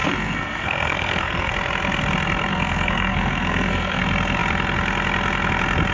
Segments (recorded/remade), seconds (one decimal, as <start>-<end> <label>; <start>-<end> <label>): 0.0-1.5 remade; 1.5-2.5 recorded; 2.5-4.0 remade; 4.0-5.9 recorded